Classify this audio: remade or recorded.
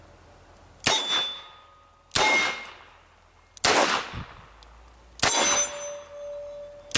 recorded